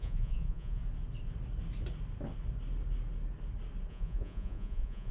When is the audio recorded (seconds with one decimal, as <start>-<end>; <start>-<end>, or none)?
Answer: 0.8-3.9